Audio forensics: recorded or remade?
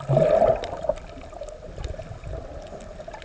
recorded